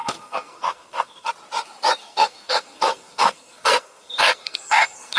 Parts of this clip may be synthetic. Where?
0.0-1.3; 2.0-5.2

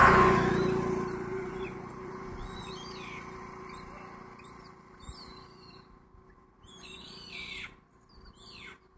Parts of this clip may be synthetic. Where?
0.0-0.5; 1.3-2.7

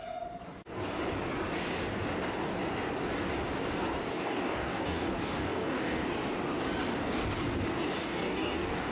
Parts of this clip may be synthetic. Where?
4.1-6.0; 8.0-8.9

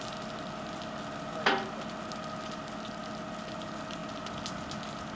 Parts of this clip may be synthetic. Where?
none